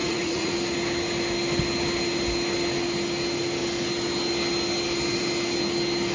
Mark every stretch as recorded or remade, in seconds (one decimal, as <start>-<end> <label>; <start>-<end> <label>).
0.0-0.5 remade; 0.5-6.1 recorded